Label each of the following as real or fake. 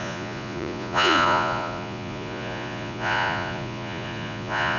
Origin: fake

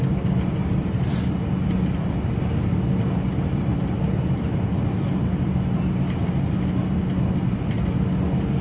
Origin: real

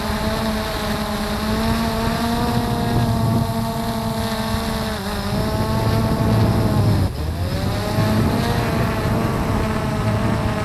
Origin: real